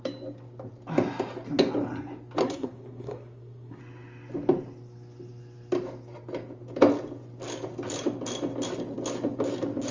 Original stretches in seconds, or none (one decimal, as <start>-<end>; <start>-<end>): 0.0-2.4; 3.8-9.9